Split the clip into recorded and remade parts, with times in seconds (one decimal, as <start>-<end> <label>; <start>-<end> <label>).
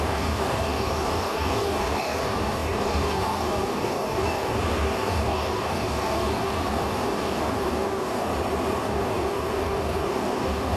0.0-8.3 remade; 8.3-8.8 recorded; 8.8-10.8 remade